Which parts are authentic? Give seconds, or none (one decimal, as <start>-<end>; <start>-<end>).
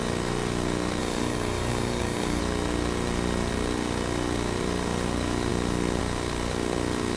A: 0.0-1.0; 2.4-7.2